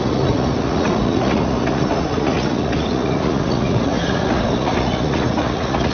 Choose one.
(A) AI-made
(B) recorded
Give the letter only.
A